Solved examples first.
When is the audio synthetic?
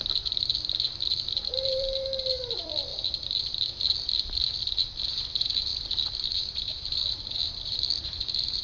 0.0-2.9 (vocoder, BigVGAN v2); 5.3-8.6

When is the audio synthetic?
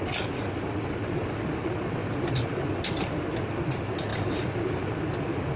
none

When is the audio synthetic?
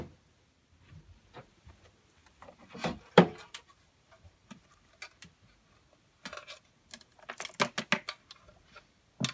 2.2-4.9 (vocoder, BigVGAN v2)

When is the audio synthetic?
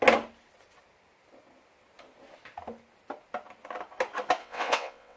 4.4-5.2 (vocoder, WaveNeXt)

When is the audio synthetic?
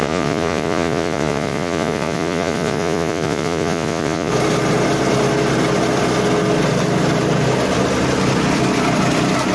0.0-4.3 (vocoder, Vocos)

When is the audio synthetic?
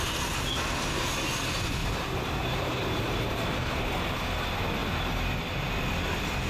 1.8-3.7 (vocoder, BigVGAN v2)